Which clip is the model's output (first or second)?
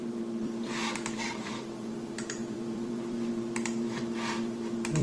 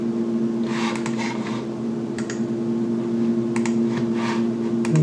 first